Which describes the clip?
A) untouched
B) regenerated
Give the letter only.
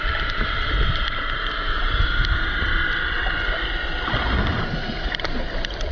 A